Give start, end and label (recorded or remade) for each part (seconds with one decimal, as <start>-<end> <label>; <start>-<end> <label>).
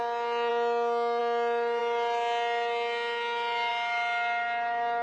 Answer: 0.0-5.0 recorded